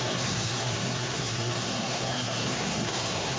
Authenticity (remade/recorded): remade